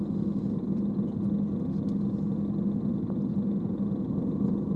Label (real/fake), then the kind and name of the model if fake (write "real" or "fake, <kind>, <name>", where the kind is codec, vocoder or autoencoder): real